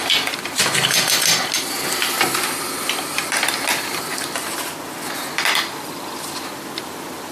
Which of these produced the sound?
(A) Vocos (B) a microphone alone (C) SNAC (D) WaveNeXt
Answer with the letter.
B